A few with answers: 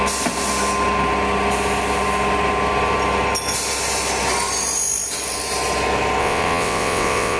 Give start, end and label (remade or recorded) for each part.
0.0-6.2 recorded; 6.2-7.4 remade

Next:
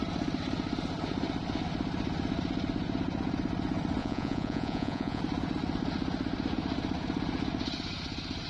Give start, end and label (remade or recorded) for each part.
0.0-4.0 recorded; 4.0-5.2 remade; 5.2-8.5 recorded

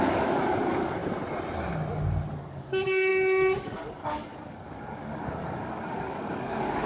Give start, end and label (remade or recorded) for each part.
0.0-1.0 remade; 1.0-2.4 recorded; 2.4-6.9 remade

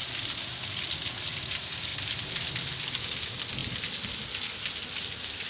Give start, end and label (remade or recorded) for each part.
0.0-5.5 recorded

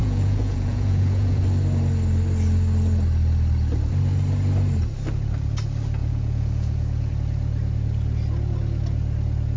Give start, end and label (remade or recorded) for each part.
0.0-1.4 remade; 1.4-6.0 recorded; 6.0-7.1 remade; 7.1-9.6 recorded

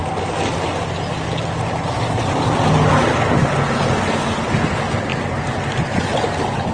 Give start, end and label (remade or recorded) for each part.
0.0-6.7 recorded

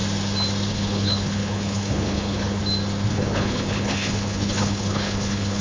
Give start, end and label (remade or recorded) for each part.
0.0-0.7 recorded; 0.7-2.6 remade; 2.6-3.1 recorded; 3.1-5.6 remade